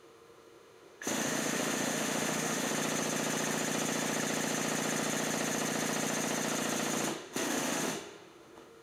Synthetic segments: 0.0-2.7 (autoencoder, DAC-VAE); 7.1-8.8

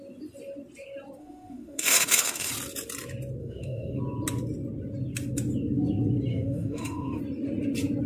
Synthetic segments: 1.2-2.5 (autoencoder, DAC-VAE); 3.4-4.0; 6.3-7.2